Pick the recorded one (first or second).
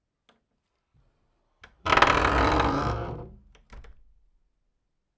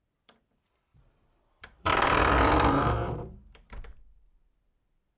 first